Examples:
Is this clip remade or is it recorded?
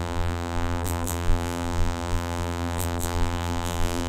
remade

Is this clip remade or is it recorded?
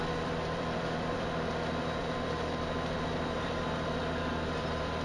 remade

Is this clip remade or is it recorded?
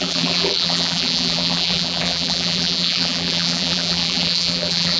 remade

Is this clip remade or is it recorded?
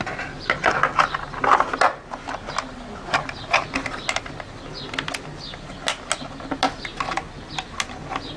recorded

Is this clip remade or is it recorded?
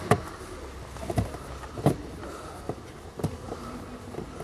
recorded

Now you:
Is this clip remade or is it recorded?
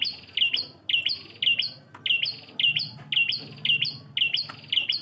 recorded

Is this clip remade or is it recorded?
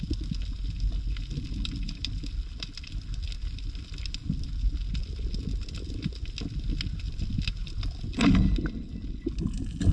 recorded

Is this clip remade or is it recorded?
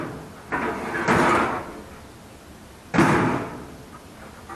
recorded